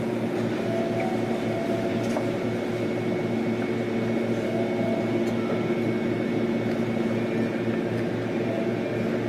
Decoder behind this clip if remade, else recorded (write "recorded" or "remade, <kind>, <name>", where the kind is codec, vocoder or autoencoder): recorded